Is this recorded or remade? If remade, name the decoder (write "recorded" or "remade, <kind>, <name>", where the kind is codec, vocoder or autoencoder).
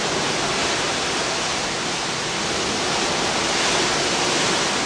recorded